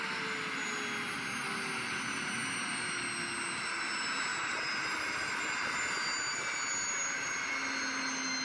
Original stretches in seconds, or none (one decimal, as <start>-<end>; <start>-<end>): 0.0-8.4